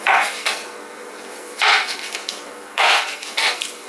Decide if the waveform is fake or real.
fake